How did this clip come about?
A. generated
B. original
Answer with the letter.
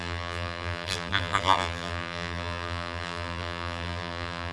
A